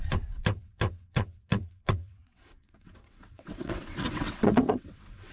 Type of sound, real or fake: fake